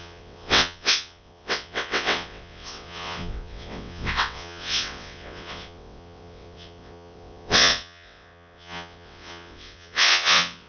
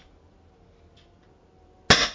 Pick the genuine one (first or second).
second